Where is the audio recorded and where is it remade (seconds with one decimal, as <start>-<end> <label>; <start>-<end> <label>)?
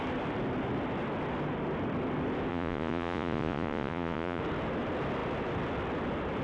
0.0-2.5 recorded; 2.5-4.4 remade; 4.4-6.4 recorded